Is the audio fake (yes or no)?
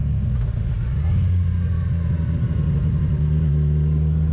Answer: no